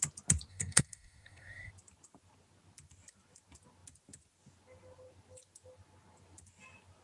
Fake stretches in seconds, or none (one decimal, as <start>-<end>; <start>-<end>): 0.5-1.7